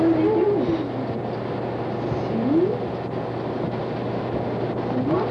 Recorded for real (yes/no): yes